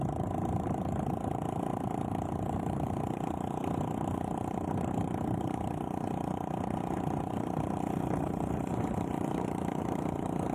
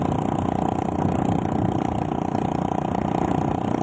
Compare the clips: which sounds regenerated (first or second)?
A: first